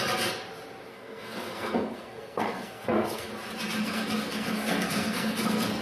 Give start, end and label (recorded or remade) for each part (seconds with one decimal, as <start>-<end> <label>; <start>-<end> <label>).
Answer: 0.0-0.9 recorded; 0.9-3.3 remade; 3.3-3.8 recorded; 3.8-5.8 remade